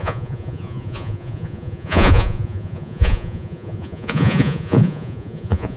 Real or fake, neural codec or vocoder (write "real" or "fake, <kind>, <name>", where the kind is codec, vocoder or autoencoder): fake, vocoder, Vocos